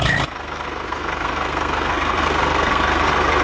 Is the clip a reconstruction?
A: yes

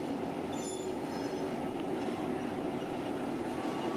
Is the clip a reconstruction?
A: yes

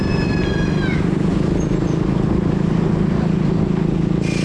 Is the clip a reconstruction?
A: no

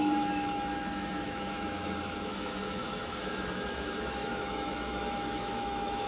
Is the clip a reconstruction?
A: yes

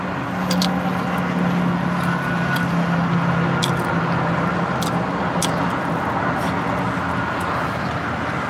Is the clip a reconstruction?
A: no